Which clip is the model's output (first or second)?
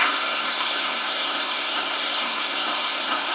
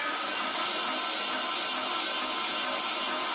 first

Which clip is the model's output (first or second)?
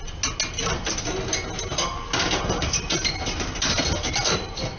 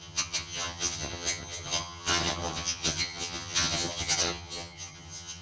second